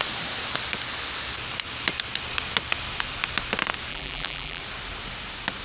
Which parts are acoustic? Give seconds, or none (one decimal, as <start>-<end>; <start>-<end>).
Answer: 0.0-3.9; 4.6-5.6